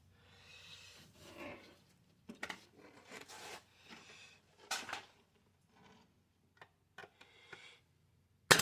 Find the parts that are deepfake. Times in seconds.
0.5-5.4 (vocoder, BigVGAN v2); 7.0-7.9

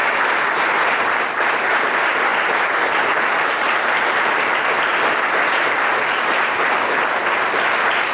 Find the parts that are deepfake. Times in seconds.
0.0-1.7 (vocoder, BigVGAN v2); 4.5-6.7